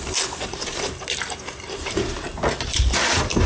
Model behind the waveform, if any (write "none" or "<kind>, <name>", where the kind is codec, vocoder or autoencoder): vocoder, BigVGAN v2